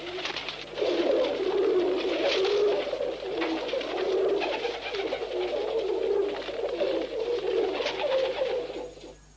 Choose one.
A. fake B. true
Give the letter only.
B